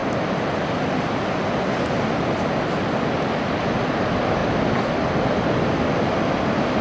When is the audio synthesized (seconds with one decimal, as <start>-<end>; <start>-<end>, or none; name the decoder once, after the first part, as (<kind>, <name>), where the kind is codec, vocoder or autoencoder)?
none